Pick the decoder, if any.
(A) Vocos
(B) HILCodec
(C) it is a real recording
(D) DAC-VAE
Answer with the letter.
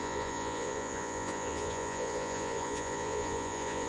A